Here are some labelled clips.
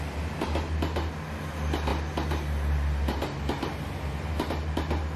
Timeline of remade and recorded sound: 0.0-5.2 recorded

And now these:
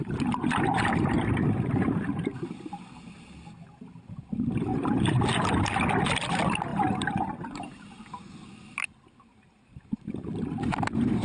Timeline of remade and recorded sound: 0.0-4.7 recorded; 4.7-5.6 remade; 5.6-6.7 recorded; 6.7-7.6 remade; 7.6-9.3 recorded; 9.3-10.3 remade; 10.3-11.2 recorded

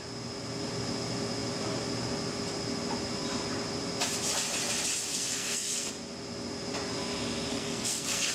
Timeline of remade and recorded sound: 0.0-5.1 recorded; 5.1-5.9 remade; 5.9-7.5 recorded; 7.5-8.3 remade

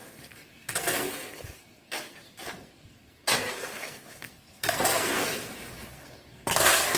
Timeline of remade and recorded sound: 0.0-7.0 remade